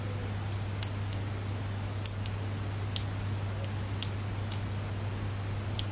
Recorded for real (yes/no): yes